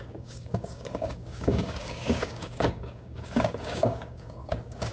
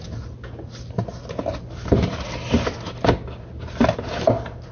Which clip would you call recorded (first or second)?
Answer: second